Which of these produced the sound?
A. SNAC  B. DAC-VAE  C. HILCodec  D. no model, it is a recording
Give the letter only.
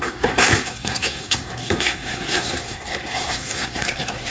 A